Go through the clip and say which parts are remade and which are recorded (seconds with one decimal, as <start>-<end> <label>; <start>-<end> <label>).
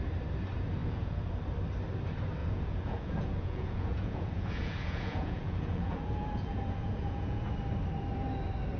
0.0-0.8 recorded; 0.8-1.3 remade; 1.3-2.4 recorded; 2.4-7.5 remade; 7.5-8.8 recorded